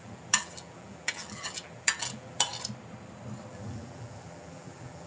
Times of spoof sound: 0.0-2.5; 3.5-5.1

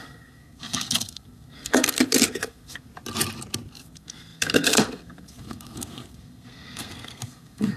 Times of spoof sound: 0.0-2.9; 3.7-7.8

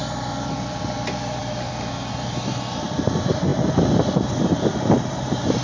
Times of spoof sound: 0.0-1.4; 2.1-3.5; 4.3-5.6

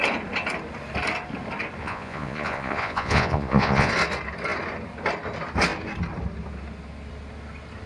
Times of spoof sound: 1.8-3.9

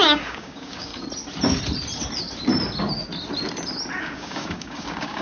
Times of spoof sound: 0.0-0.9; 4.0-5.2

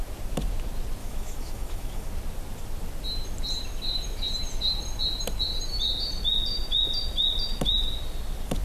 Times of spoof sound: 1.0-2.1

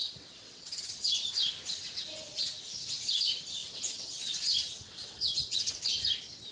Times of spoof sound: 0.0-0.9; 3.6-5.8

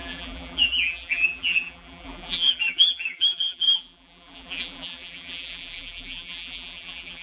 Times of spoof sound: 0.0-7.2